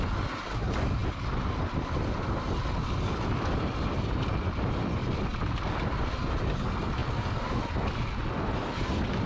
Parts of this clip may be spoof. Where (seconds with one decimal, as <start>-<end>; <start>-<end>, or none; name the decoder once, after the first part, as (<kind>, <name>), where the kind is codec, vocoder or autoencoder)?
none

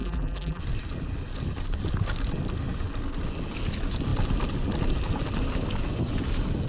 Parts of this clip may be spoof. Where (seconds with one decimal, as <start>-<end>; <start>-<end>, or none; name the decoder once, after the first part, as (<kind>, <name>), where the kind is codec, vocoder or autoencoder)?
0.0-0.6 (vocoder, BigVGAN v2)

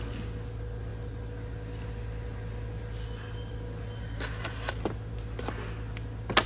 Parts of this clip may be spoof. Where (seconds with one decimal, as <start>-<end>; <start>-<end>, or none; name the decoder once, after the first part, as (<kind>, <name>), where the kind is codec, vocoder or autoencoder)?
none

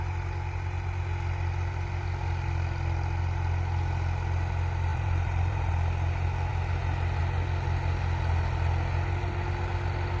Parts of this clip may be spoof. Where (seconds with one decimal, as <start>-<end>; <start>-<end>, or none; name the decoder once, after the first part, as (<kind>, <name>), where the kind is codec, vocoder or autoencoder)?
4.9-5.7 (vocoder, BigVGAN v2)

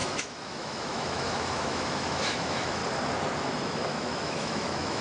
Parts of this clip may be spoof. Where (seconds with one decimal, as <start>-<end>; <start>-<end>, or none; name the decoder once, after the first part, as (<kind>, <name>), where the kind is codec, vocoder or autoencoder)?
0.0-2.8 (autoencoder, DAC-VAE); 3.4-5.0

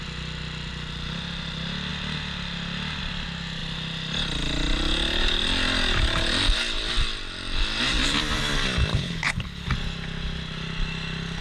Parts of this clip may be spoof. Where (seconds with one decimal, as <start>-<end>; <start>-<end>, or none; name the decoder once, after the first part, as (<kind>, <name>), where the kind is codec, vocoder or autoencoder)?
8.9-9.7 (codec, HILCodec)

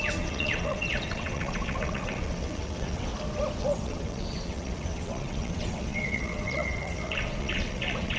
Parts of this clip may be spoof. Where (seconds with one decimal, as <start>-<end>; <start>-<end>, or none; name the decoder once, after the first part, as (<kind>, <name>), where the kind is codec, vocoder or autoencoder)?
0.0-3.1 (vocoder, WaveNeXt); 3.6-8.2

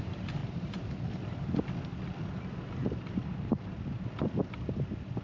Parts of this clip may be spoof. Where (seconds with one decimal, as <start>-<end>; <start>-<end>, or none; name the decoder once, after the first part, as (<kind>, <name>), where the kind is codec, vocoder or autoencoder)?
0.4-1.0 (vocoder, BigVGAN v2); 2.8-3.5